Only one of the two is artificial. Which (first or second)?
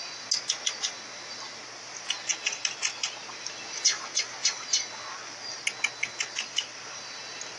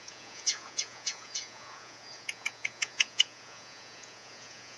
second